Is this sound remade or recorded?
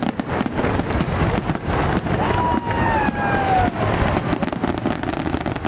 recorded